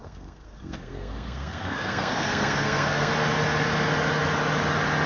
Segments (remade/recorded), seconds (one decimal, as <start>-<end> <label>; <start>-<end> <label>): 0.0-3.1 remade; 3.1-5.1 recorded

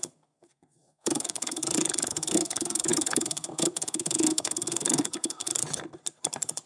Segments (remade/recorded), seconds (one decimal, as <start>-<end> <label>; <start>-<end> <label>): 0.0-1.6 remade; 1.6-2.1 recorded; 2.1-5.5 remade; 5.5-6.7 recorded

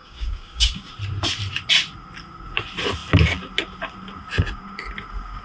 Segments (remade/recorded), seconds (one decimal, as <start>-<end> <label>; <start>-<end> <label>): 0.0-0.9 remade; 0.9-5.4 recorded

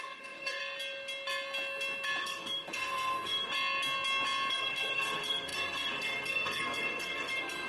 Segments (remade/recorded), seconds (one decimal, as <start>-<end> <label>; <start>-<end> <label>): 0.0-0.6 remade; 0.6-2.2 recorded; 2.2-3.5 remade; 3.5-4.5 recorded; 4.5-7.7 remade

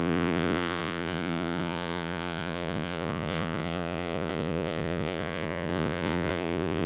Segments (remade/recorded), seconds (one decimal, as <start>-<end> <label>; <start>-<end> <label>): 0.0-6.9 remade

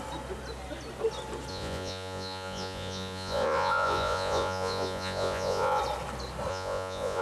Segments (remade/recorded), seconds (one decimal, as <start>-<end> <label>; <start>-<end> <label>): 0.0-1.5 recorded; 1.5-5.8 remade; 5.8-6.5 recorded; 6.5-7.2 remade